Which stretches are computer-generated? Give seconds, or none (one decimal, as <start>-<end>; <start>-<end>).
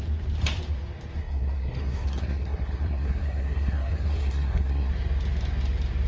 1.2-4.9